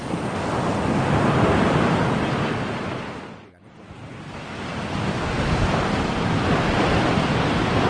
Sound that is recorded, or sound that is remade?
recorded